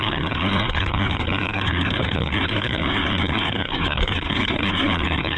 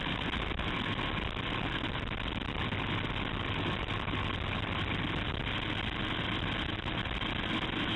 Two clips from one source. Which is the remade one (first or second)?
first